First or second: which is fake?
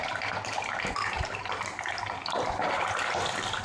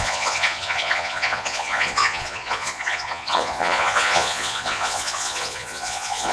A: second